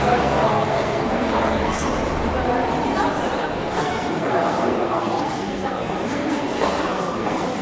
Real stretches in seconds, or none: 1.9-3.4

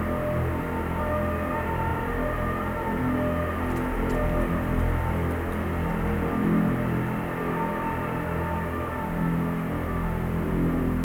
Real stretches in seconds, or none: 0.0-11.0

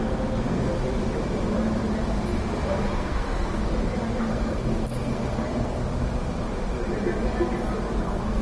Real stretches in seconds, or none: 0.7-2.7; 3.7-4.2; 5.8-8.0